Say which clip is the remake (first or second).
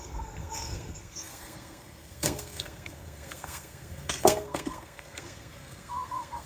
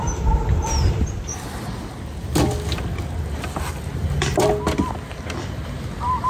first